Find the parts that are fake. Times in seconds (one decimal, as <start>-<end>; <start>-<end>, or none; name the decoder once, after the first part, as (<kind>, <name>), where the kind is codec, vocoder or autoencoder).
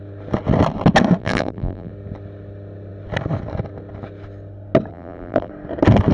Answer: 1.2-1.9 (vocoder, BigVGAN v2); 4.9-5.5